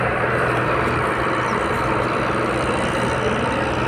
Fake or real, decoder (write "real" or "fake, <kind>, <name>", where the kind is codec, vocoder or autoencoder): real